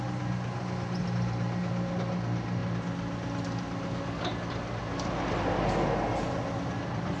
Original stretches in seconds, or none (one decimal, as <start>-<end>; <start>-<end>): 0.0-7.2

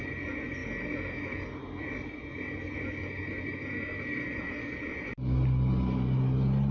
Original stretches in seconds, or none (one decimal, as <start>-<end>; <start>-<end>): 0.0-6.7